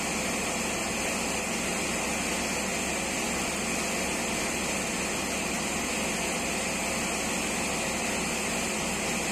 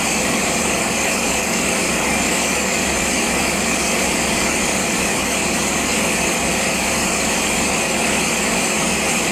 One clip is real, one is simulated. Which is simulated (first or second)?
second